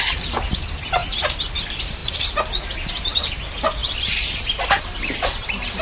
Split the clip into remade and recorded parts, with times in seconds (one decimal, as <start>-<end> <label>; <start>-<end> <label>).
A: 0.0-5.8 recorded